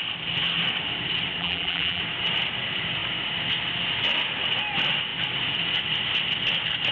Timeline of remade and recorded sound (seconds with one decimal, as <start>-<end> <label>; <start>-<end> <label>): 0.0-1.4 recorded; 1.4-2.0 remade; 2.0-6.9 recorded